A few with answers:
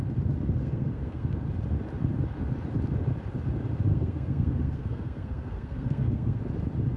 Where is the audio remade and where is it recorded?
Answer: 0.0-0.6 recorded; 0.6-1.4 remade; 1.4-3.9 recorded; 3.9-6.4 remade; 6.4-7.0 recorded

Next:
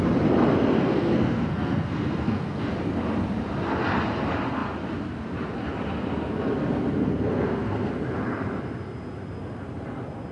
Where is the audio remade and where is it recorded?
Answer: 0.0-0.8 recorded; 0.8-2.7 remade; 2.7-7.0 recorded; 7.0-7.9 remade; 7.9-10.3 recorded

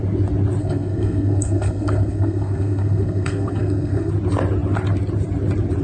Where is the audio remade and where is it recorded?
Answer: 0.0-0.6 recorded; 0.6-4.1 remade; 4.1-5.8 recorded

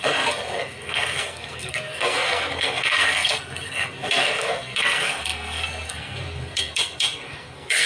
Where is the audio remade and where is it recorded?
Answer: 0.0-7.9 remade

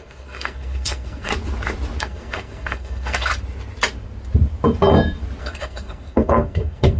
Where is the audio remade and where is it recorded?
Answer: 0.0-1.3 remade; 1.3-2.0 recorded; 2.0-3.3 remade; 3.3-5.4 recorded; 5.4-7.0 remade

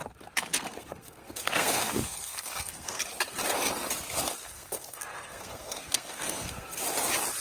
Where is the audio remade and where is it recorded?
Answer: 0.0-0.5 recorded; 0.5-3.0 remade; 3.0-4.4 recorded; 4.4-6.8 remade; 6.8-7.4 recorded

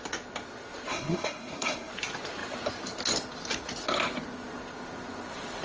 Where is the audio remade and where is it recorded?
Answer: 0.0-0.9 recorded; 0.9-1.9 remade; 1.9-5.6 recorded